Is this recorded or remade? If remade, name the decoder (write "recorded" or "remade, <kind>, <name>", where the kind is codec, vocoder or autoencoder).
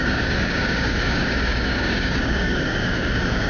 remade, codec, DAC